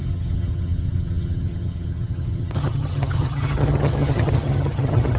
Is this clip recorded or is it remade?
remade